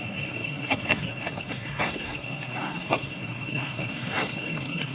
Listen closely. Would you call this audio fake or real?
fake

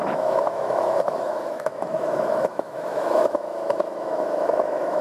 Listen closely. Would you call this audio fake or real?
fake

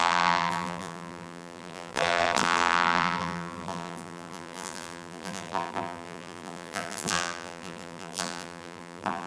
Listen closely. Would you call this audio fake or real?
fake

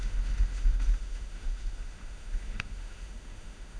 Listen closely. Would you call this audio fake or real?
fake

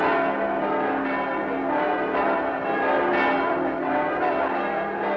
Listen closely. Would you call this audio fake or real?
real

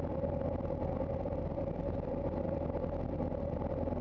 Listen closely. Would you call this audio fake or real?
fake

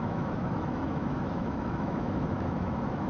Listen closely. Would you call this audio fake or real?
fake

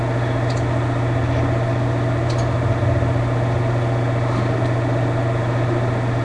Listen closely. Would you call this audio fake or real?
real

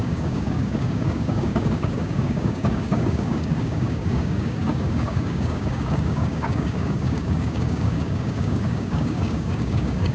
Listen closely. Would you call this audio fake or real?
fake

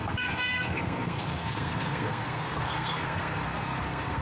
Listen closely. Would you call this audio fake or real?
fake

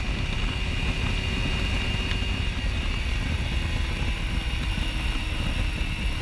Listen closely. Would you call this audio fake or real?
real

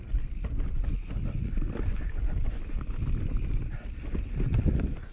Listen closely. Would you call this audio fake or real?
real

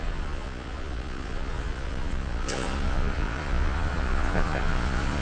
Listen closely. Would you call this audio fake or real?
fake